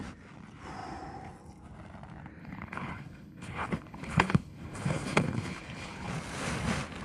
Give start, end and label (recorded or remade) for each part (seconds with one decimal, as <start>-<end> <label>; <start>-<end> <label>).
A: 0.0-2.4 recorded; 2.4-6.1 remade; 6.1-7.0 recorded